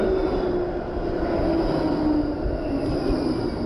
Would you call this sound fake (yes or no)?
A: no